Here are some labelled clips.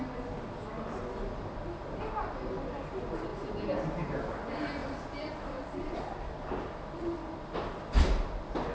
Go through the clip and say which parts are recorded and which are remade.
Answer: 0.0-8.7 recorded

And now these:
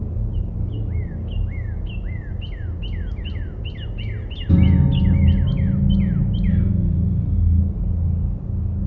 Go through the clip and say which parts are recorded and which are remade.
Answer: 0.0-6.5 recorded; 6.5-7.6 remade; 7.6-8.9 recorded